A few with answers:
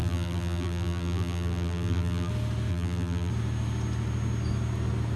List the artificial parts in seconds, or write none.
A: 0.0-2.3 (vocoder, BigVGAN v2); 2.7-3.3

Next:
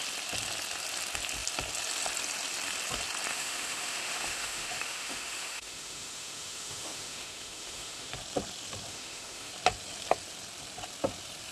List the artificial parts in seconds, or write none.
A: 3.3-8.1 (autoencoder, DAC-VAE); 8.9-9.5